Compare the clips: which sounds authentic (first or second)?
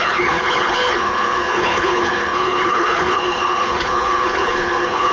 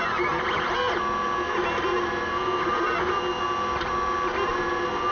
second